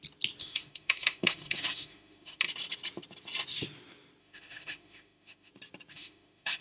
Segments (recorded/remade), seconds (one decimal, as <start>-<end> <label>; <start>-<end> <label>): 0.0-0.4 recorded; 0.4-2.4 remade; 2.4-4.2 recorded; 4.2-5.5 remade; 5.5-5.9 recorded; 5.9-6.6 remade